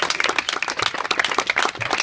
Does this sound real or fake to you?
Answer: real